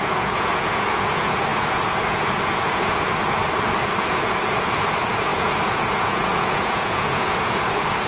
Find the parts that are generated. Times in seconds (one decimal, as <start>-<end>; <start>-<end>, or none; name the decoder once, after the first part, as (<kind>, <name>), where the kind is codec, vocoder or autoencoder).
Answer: 0.0-3.4 (vocoder, Vocos); 4.0-8.1